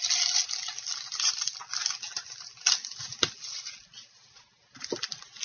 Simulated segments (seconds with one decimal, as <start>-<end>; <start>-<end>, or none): none